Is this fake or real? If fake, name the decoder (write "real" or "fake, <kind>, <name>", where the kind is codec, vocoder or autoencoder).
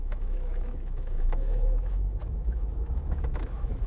fake, autoencoder, DAC-VAE